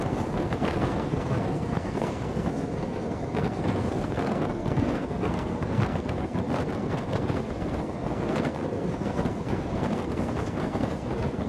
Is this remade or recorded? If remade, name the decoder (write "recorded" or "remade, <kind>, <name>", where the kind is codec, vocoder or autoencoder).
remade, codec, SNAC